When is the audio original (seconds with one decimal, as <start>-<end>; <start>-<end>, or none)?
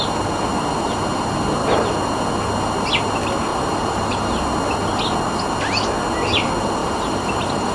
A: 0.0-3.5; 4.3-6.8